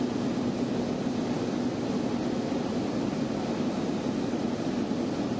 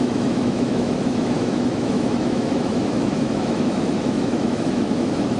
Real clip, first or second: first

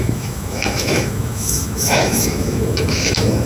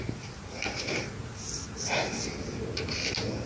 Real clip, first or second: second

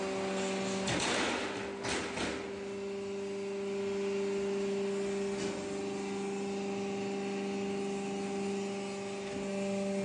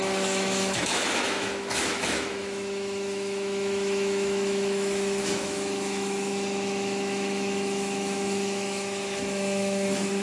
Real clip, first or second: first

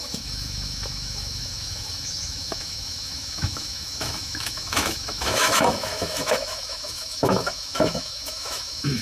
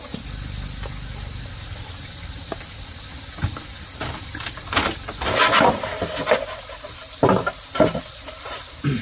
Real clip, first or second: second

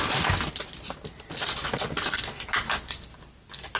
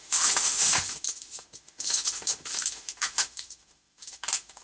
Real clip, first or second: first